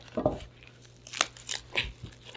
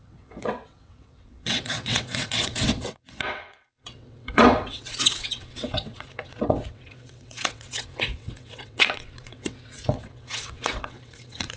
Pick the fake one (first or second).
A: second